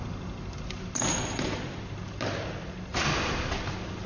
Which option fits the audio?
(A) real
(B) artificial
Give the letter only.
A